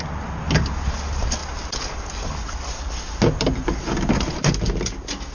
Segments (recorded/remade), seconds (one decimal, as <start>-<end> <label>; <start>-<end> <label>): 0.0-5.3 recorded

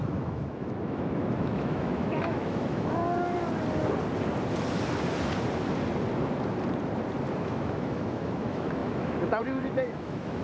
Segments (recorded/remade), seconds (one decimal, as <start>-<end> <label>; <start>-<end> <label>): 0.0-3.0 remade; 3.0-7.3 recorded; 7.3-10.4 remade

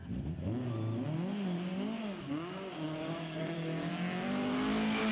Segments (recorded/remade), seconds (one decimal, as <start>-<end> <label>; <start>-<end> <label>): 0.0-2.0 recorded; 2.0-3.9 remade; 3.9-5.1 recorded